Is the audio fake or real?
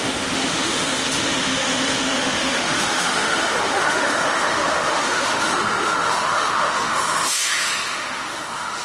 fake